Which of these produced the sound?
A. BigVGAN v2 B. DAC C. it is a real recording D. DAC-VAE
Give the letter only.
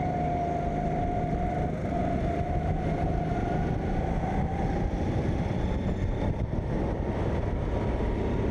C